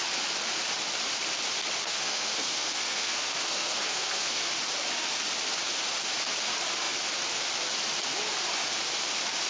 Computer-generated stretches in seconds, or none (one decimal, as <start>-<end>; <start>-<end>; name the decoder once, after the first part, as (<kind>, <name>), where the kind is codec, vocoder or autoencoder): 1.8-4.5 (codec, SNAC)